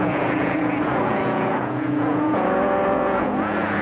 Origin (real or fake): fake